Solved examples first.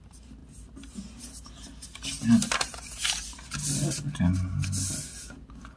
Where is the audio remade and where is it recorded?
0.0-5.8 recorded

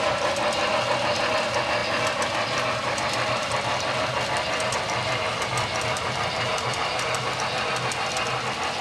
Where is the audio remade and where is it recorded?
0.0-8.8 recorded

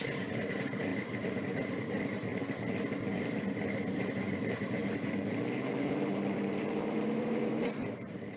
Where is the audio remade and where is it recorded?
0.0-2.3 remade; 2.3-3.5 recorded; 3.5-4.8 remade; 4.8-5.8 recorded; 5.8-8.4 remade

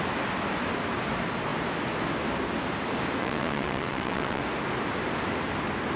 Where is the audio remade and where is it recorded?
0.0-3.2 recorded; 3.2-4.4 remade; 4.4-6.0 recorded